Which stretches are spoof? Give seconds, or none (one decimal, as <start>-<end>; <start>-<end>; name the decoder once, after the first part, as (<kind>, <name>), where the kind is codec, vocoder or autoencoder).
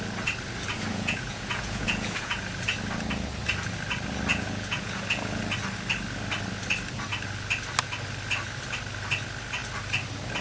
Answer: 0.9-2.4 (vocoder, Vocos); 4.3-5.4